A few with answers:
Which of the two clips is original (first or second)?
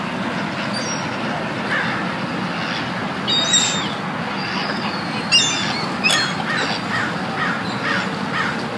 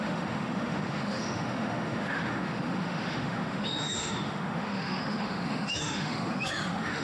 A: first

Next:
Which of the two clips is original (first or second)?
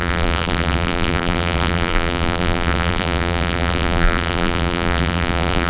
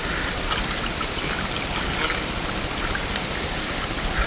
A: second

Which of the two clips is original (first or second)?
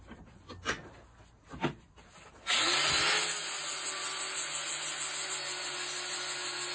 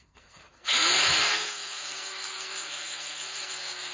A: first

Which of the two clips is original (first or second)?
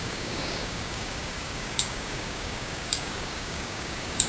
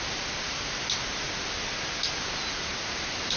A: second